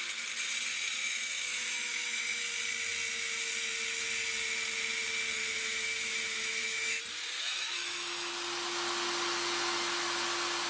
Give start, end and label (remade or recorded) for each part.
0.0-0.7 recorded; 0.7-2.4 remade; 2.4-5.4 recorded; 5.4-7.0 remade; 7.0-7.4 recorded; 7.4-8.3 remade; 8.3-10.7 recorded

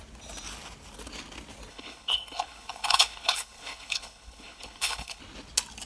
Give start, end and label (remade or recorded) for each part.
0.0-1.7 recorded; 1.7-5.2 remade; 5.2-5.9 recorded

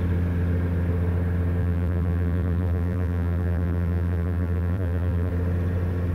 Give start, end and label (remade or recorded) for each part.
0.0-1.6 recorded; 1.6-5.3 remade; 5.3-6.1 recorded

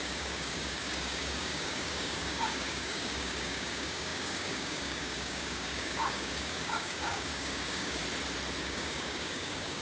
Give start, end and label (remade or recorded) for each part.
0.0-8.0 remade; 8.0-8.6 recorded; 8.6-9.8 remade